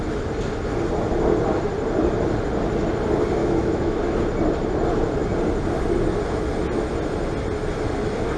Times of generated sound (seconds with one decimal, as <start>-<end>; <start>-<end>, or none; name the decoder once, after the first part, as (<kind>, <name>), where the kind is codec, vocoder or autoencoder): 3.4-4.0 (autoencoder, DAC-VAE)